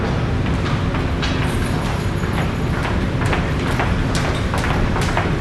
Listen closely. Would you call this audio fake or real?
real